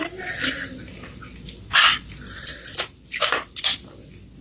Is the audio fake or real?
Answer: real